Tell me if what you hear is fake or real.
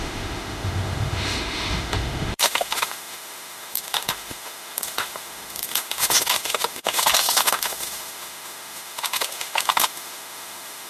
fake